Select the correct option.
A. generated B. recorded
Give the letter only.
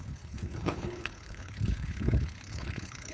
A